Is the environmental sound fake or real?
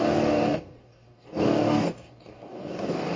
fake